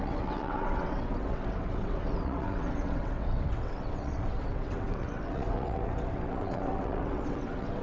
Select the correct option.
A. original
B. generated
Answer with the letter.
B